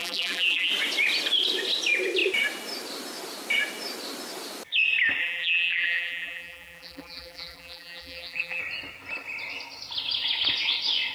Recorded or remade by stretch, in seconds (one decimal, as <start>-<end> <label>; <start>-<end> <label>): 0.0-0.7 remade; 0.7-5.2 recorded; 5.2-8.6 remade; 8.6-11.1 recorded